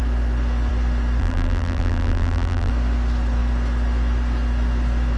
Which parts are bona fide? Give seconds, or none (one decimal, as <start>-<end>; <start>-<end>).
0.0-1.2; 2.7-5.2